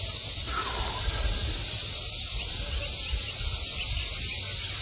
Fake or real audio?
real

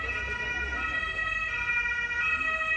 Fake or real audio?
real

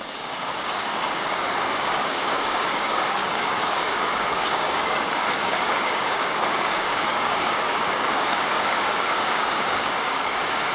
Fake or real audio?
fake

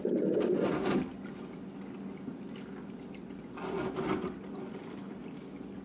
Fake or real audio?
real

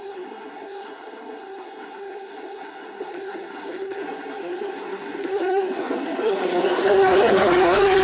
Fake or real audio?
fake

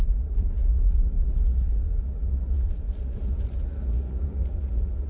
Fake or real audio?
fake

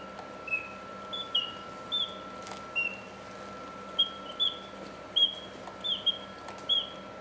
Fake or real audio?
real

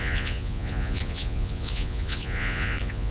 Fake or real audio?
fake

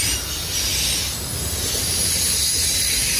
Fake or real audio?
real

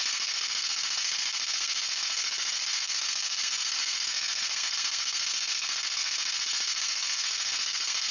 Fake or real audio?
fake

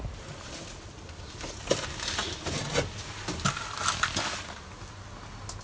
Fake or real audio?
real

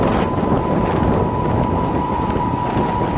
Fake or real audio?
real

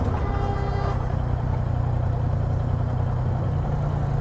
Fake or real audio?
real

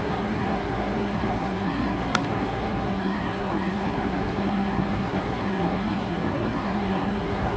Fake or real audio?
fake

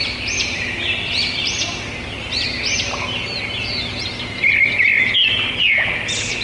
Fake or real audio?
real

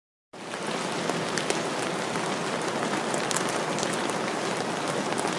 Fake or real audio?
real